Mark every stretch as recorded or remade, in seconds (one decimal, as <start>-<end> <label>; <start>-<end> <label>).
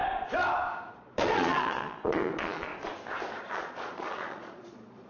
0.0-0.9 recorded; 0.9-2.7 remade; 2.7-3.4 recorded; 3.4-5.1 remade